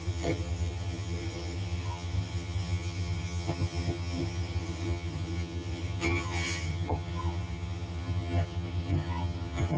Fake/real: fake